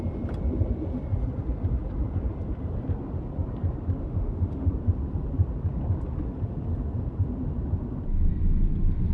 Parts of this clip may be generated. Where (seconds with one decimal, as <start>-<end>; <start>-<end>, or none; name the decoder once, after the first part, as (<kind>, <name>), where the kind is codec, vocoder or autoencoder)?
4.0-4.7 (autoencoder, DAC-VAE)

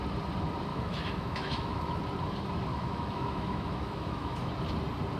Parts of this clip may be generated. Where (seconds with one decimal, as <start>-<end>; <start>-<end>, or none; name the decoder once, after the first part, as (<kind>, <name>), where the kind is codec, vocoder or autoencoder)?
0.7-2.0 (autoencoder, DAC-VAE); 2.7-4.5

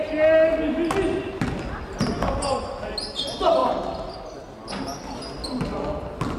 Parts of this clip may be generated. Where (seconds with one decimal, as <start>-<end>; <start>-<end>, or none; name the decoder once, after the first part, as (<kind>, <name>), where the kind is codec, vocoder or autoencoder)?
none

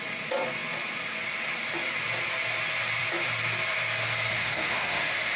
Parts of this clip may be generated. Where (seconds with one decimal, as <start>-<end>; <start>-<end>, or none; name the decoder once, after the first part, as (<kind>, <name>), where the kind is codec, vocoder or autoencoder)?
4.3-5.4 (autoencoder, DAC-VAE)

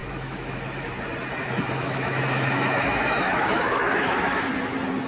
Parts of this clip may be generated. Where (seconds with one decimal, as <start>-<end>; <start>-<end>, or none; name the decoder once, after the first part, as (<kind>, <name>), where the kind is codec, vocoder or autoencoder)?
0.0-0.9 (autoencoder, DAC-VAE); 1.4-4.5

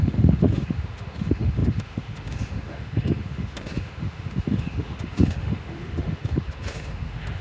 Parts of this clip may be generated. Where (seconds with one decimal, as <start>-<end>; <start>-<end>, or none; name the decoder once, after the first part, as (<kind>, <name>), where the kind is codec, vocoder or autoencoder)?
0.0-7.4 (autoencoder, DAC-VAE)